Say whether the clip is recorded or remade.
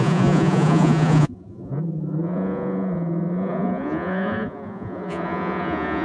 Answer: remade